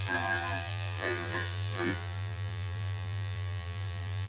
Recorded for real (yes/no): no